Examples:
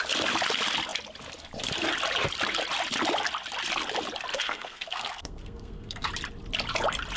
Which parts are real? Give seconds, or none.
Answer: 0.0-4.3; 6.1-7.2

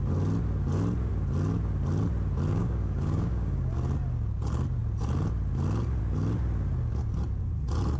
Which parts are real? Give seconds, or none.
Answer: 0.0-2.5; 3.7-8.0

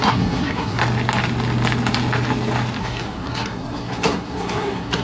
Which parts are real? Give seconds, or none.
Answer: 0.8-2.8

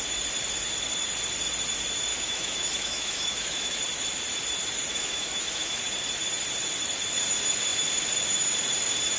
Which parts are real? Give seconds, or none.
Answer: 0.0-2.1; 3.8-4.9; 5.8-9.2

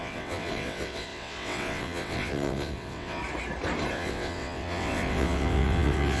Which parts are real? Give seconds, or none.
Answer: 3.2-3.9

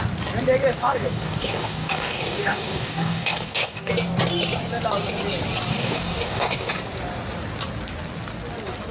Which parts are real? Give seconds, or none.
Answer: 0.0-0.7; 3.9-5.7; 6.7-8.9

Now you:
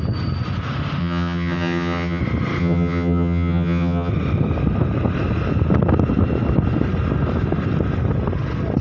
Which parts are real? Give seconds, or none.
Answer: 0.0-1.0; 2.2-2.6; 4.1-8.8

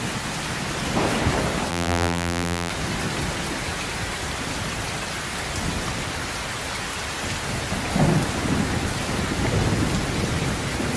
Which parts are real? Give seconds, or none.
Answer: 0.0-1.7; 2.7-11.0